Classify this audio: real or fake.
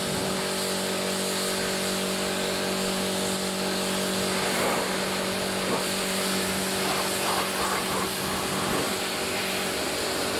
real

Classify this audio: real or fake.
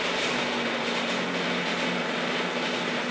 real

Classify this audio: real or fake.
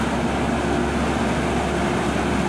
real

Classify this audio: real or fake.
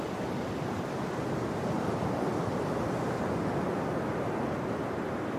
real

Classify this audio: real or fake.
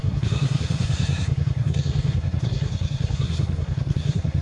fake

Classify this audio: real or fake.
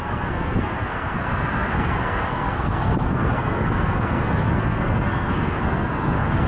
fake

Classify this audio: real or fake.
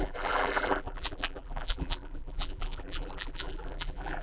fake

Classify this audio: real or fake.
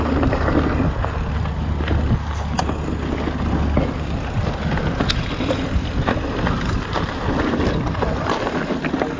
real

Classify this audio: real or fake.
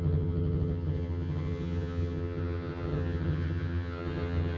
fake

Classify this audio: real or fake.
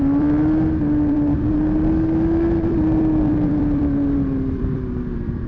fake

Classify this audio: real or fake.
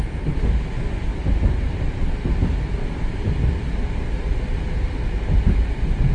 real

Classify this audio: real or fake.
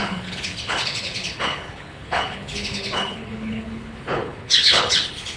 fake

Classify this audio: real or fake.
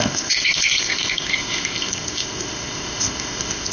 fake